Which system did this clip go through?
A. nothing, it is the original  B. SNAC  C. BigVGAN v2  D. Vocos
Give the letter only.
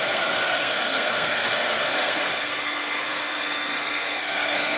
B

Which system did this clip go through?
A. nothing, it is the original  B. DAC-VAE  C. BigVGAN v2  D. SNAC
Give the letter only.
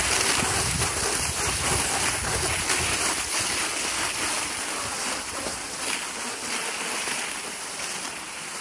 A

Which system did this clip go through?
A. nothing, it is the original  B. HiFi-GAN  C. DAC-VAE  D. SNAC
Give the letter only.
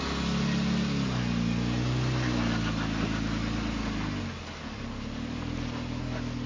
A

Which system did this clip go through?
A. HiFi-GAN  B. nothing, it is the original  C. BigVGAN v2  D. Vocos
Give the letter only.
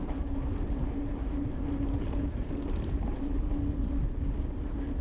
B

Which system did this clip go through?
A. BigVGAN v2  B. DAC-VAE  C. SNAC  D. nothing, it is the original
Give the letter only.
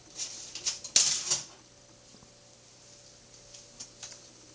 D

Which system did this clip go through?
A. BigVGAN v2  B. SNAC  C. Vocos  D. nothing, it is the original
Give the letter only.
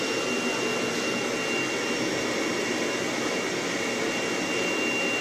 D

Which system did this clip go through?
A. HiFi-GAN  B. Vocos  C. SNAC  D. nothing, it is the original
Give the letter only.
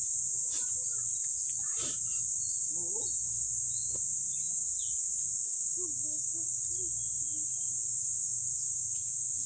D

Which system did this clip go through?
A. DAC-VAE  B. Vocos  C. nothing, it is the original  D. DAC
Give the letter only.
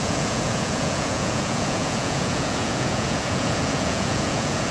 B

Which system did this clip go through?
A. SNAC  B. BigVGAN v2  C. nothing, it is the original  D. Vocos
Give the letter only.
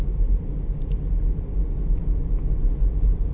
C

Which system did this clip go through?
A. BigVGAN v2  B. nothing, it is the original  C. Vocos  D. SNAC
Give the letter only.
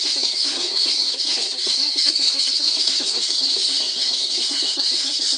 D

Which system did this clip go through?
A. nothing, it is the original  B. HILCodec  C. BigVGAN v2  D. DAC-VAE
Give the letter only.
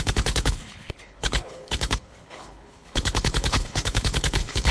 B